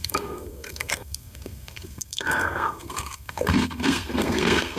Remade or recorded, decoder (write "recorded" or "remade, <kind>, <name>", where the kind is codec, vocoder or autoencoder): remade, codec, SNAC